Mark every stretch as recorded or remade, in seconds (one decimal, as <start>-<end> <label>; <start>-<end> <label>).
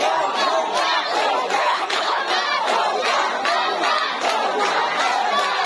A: 0.0-1.6 recorded; 1.6-2.2 remade; 2.2-5.7 recorded